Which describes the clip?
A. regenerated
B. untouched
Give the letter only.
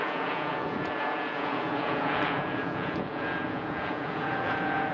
A